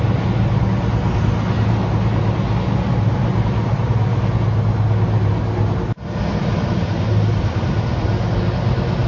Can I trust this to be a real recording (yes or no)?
yes